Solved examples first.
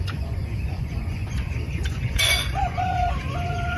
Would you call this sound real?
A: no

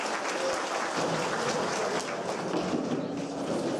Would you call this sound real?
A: yes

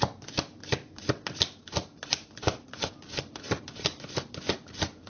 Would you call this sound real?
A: yes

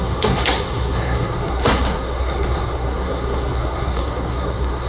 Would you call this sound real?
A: no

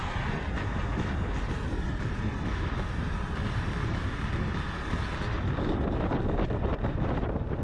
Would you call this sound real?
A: yes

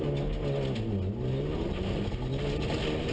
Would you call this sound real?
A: yes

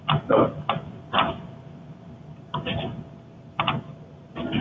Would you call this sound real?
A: yes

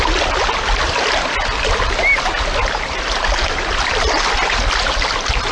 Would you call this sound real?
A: yes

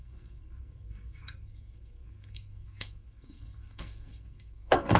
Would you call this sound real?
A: no